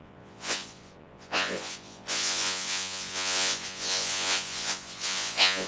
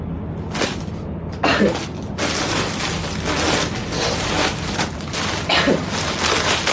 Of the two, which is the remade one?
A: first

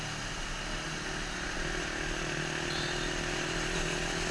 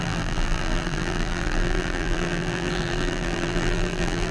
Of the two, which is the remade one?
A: second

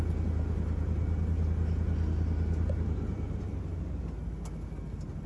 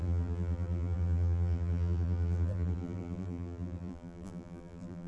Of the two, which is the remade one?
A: second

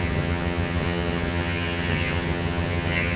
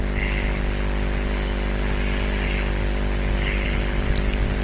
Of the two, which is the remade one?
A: first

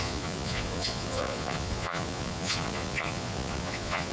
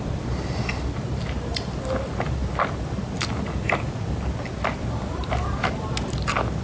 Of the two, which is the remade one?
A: first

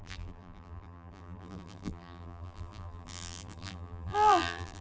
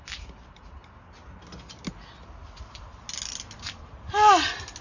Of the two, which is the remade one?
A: first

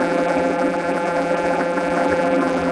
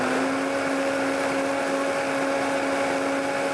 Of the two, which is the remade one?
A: first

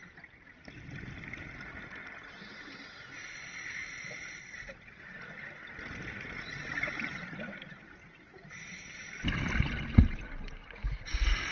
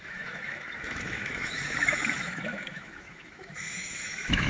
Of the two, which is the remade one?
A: second